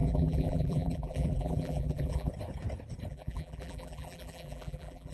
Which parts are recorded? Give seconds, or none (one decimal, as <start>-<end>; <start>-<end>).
2.3-3.1